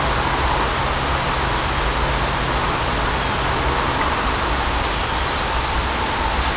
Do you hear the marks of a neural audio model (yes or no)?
no